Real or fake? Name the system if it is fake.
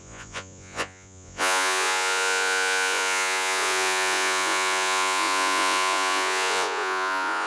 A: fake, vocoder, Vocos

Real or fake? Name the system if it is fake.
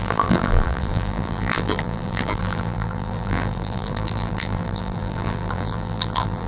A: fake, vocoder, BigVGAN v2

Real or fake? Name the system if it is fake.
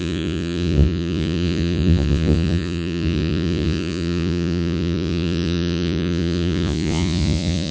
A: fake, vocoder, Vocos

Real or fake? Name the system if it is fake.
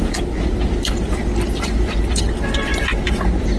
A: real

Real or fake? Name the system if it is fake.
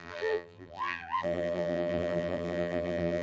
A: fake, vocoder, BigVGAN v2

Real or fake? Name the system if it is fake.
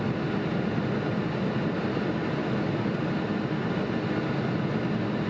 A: real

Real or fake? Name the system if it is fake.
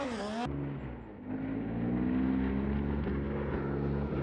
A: real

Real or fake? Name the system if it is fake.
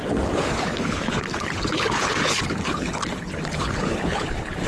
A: fake, codec, HILCodec